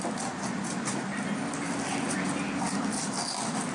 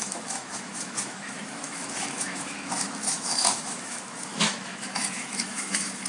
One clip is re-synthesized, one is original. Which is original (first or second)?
first